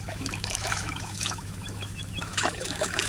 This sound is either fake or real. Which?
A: fake